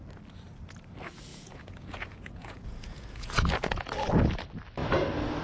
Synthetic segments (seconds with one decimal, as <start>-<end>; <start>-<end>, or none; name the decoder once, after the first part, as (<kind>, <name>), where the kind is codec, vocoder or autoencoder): 1.3-3.9 (vocoder, Vocos)